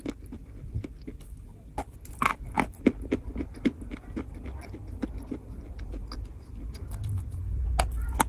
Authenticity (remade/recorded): recorded